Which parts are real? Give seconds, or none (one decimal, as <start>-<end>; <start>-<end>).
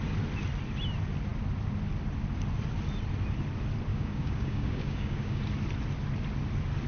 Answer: 0.0-3.9; 5.4-6.9